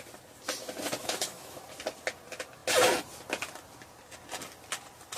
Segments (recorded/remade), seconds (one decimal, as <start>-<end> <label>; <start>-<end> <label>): 0.0-1.0 recorded; 1.0-1.6 remade; 1.6-5.2 recorded